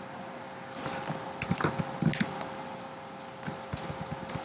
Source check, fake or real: real